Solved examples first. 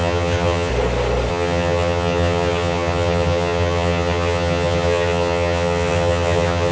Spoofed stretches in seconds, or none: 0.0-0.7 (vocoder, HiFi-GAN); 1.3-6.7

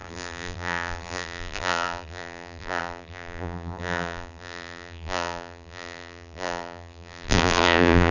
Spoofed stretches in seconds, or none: 0.0-8.1 (vocoder, BigVGAN v2)

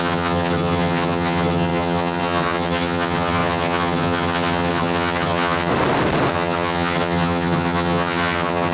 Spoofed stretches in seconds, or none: 0.0-5.7 (vocoder, HiFi-GAN); 6.3-8.7

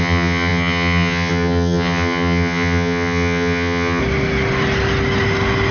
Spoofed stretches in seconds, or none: 0.0-4.0 (vocoder, HiFi-GAN)

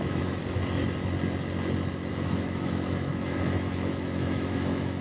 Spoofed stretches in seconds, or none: 0.0-0.4 (autoencoder, DAC-VAE); 2.1-5.0

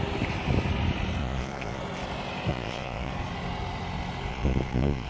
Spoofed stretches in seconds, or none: 1.2-1.8 (vocoder, Vocos); 2.5-3.1; 4.3-5.1